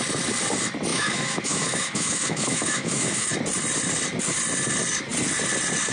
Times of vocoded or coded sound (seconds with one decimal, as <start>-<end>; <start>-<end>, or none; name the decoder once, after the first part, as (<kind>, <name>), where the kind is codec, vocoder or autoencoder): 0.9-3.3 (autoencoder, DAC-VAE)